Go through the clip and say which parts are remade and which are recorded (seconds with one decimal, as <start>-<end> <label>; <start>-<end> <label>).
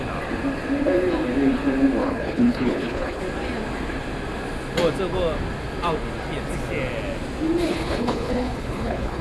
0.0-2.0 recorded; 2.0-3.2 remade; 3.2-7.7 recorded; 7.7-9.2 remade